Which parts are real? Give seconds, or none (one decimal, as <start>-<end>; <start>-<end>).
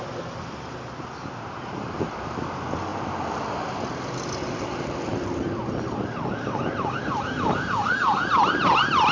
0.0-9.1